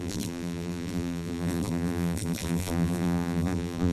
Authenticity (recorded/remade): remade